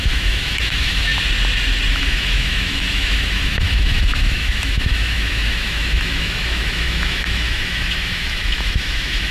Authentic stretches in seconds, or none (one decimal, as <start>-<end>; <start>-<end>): 1.1-1.9